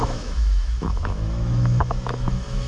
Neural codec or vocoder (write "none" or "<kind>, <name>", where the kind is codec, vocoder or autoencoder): autoencoder, DAC-VAE